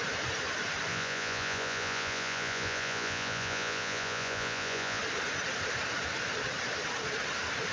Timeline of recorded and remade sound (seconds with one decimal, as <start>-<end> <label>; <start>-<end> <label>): 0.0-0.9 recorded; 0.9-5.0 remade; 5.0-7.7 recorded